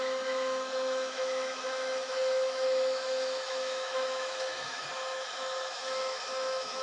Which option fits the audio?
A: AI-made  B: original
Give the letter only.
A